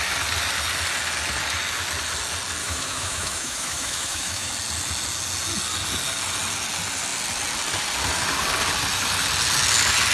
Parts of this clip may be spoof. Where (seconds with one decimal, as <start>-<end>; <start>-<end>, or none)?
2.6-4.5